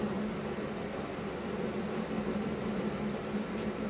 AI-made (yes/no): no